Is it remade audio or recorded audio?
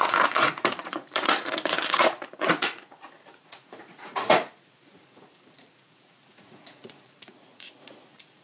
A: remade